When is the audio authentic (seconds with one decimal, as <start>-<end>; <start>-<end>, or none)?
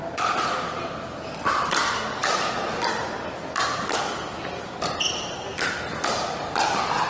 0.0-7.1